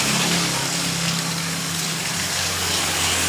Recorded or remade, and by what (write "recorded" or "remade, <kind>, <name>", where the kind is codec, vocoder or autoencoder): remade, codec, DAC